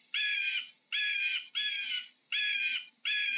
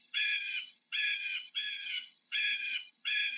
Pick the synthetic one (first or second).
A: second